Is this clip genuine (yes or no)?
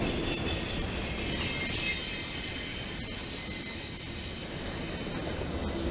yes